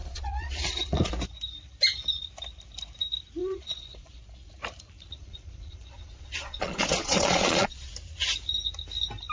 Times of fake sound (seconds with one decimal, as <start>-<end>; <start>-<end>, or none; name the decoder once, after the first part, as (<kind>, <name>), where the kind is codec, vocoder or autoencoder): 0.0-1.1 (vocoder, Vocos); 3.4-4.5; 5.2-7.9